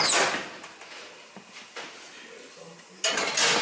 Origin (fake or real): real